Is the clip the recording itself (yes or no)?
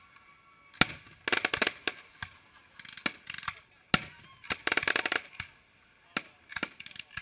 yes